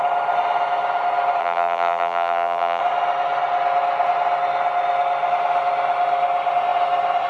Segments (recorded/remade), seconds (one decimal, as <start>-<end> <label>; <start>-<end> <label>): 0.0-1.4 recorded; 1.4-2.8 remade; 2.8-7.3 recorded